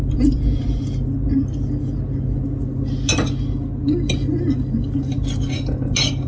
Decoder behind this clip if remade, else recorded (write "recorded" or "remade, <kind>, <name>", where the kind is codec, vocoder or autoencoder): recorded